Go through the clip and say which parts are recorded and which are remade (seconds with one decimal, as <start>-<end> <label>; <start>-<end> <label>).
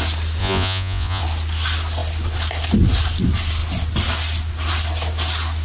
0.0-0.4 recorded; 0.4-1.2 remade; 1.2-5.6 recorded